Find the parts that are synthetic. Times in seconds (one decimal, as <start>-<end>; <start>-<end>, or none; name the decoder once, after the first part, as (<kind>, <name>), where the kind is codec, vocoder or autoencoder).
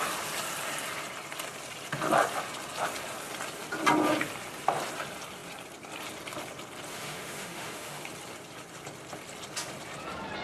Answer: 6.9-8.0 (autoencoder, DAC-VAE)